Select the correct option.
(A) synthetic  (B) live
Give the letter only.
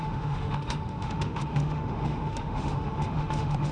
A